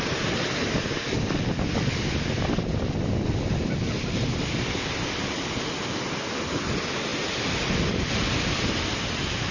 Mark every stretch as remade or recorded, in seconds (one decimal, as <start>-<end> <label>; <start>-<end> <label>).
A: 0.0-9.5 recorded